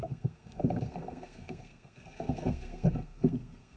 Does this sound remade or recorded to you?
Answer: remade